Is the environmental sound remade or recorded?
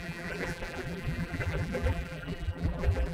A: remade